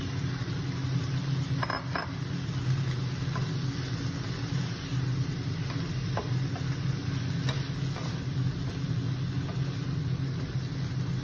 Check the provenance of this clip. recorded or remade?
recorded